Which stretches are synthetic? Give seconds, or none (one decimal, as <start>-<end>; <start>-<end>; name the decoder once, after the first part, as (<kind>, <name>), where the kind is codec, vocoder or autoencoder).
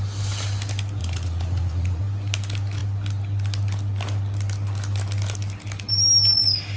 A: 1.0-2.0 (vocoder, Vocos)